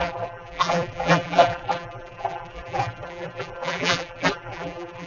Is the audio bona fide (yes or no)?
no